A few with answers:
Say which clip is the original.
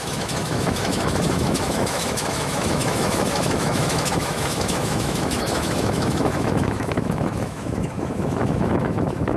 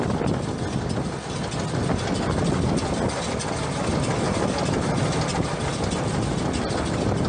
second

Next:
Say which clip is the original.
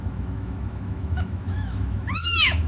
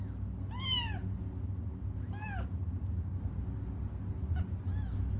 second